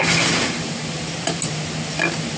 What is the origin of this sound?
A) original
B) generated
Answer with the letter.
A